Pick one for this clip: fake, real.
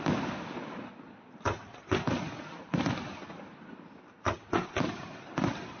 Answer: real